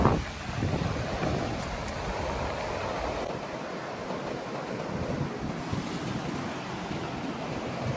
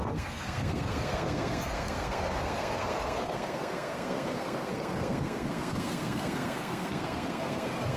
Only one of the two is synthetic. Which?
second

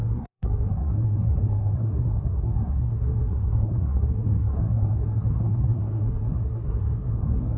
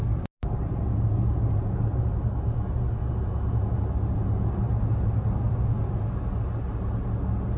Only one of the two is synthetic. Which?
first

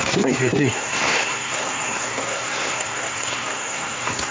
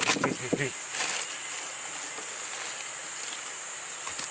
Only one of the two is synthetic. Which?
first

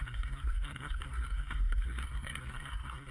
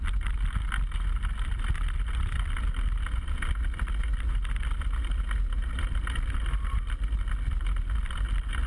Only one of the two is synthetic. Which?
first